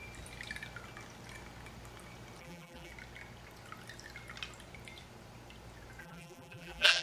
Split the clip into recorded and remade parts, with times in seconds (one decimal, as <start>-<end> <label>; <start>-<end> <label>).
0.0-2.4 recorded; 2.4-2.9 remade; 2.9-6.0 recorded; 6.0-7.0 remade